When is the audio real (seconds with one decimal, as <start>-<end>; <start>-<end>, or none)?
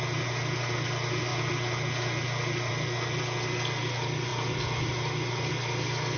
0.0-6.2